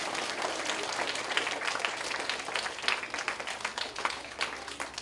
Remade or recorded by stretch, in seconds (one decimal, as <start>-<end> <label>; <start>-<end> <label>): 0.0-3.7 recorded; 3.7-4.4 remade; 4.4-5.0 recorded